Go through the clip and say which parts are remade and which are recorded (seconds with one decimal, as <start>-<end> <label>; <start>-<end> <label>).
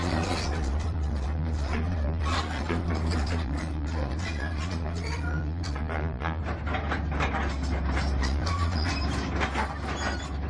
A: 0.0-6.4 remade; 6.4-8.2 recorded; 8.2-8.9 remade; 8.9-10.5 recorded